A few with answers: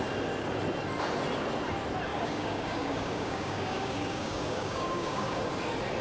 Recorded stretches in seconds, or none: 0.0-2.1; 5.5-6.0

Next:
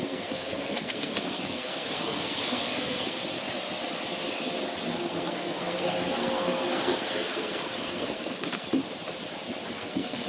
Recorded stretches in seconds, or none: 3.2-4.9; 8.7-9.7

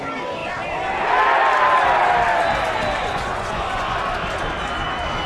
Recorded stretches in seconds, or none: 0.0-3.0; 4.0-5.3

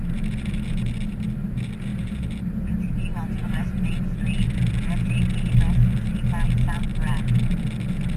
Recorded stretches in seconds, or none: 0.0-8.2

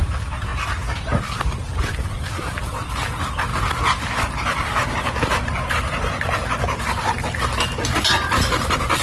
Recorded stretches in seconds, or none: 0.5-1.8; 3.5-7.9

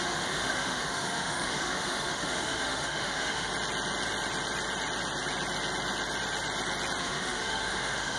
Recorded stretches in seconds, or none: 3.5-7.0